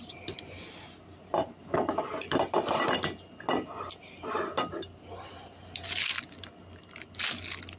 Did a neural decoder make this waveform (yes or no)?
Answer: no